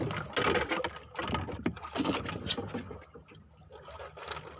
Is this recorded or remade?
recorded